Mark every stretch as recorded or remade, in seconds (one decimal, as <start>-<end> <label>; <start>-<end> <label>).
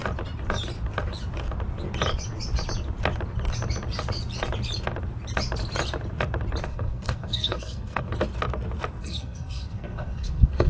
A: 0.0-6.7 recorded; 6.7-8.1 remade; 8.1-9.0 recorded; 9.0-10.7 remade